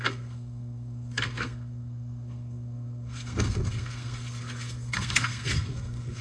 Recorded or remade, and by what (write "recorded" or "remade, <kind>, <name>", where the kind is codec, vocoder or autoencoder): remade, codec, SNAC